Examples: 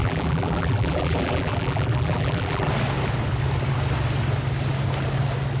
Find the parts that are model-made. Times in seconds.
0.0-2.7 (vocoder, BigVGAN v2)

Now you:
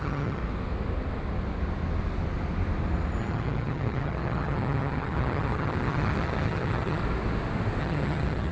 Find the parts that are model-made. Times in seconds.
0.0-0.4 (vocoder, HiFi-GAN); 3.2-7.0; 7.8-8.5

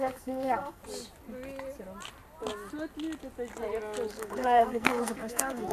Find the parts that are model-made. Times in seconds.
0.0-0.8 (codec, SNAC); 4.1-5.7

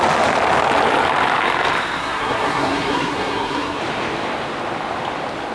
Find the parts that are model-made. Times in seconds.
2.0-3.8 (codec, SNAC)